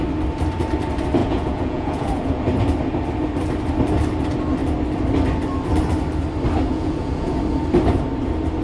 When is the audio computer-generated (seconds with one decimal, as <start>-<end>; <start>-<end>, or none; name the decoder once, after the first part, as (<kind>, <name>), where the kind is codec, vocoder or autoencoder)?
1.2-2.4 (vocoder, Vocos); 6.7-7.4